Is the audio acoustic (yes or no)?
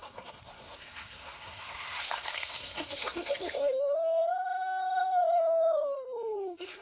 no